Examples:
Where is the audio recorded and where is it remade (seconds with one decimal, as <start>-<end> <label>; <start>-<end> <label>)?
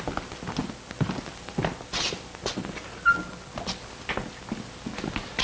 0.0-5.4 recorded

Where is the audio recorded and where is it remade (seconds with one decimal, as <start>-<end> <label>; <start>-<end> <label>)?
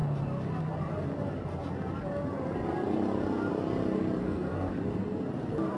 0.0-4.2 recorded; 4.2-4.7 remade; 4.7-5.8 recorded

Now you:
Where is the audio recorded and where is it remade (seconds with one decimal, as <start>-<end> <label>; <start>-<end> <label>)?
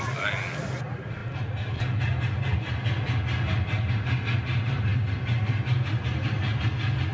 0.0-7.1 recorded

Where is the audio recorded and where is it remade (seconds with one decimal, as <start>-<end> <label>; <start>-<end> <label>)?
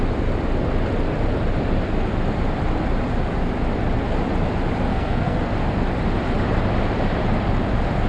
0.0-4.9 recorded; 4.9-5.5 remade; 5.5-8.1 recorded